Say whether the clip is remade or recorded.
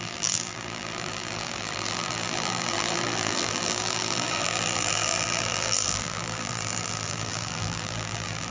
remade